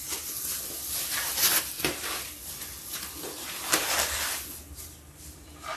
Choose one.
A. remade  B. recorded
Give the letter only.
B